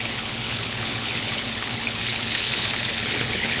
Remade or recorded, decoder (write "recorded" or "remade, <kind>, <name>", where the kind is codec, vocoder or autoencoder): remade, codec, HILCodec